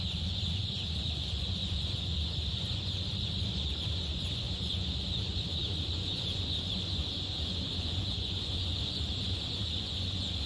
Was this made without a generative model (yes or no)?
no